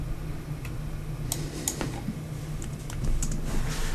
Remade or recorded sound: recorded